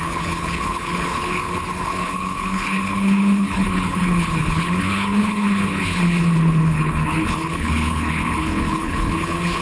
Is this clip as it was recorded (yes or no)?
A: no